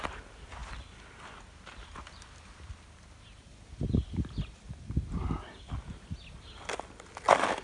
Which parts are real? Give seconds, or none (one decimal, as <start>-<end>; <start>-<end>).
0.0-7.6